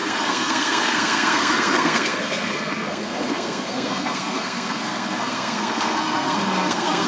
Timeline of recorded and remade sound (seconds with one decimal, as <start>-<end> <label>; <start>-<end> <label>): 0.0-7.1 remade